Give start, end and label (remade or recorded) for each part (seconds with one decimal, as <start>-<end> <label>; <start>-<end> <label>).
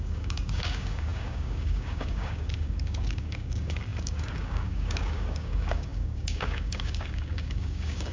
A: 0.0-8.1 remade